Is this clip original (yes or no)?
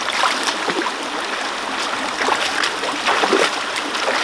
yes